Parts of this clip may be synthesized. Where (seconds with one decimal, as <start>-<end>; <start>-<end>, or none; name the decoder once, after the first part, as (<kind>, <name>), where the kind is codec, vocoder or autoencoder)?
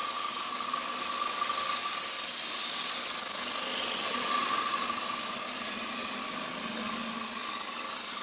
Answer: none